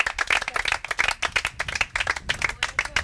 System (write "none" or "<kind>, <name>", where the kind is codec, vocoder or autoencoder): none